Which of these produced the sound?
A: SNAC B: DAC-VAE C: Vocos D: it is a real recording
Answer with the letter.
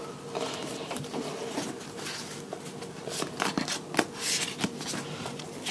D